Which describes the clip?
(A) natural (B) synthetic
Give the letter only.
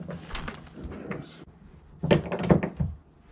A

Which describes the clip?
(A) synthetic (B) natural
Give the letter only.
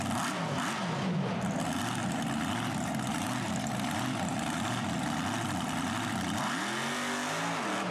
B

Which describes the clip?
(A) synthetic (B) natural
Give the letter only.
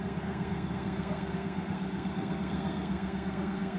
A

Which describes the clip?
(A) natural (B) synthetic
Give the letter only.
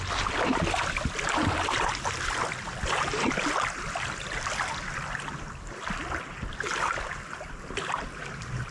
A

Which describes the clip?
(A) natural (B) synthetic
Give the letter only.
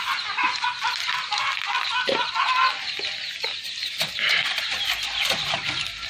A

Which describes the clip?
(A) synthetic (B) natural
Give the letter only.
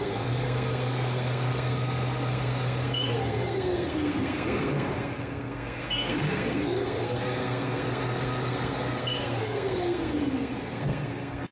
A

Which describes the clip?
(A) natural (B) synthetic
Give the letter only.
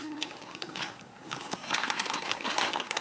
B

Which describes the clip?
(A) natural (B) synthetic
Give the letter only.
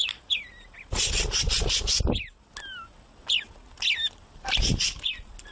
A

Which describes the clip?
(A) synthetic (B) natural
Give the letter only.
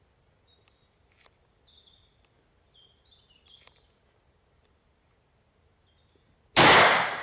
B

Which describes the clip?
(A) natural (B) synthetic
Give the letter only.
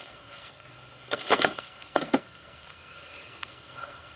B